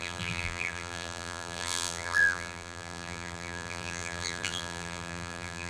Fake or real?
fake